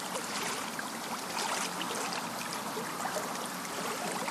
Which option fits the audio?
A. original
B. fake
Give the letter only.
A